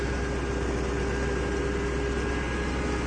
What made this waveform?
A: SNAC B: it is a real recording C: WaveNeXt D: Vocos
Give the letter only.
B